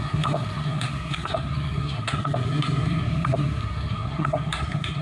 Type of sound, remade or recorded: remade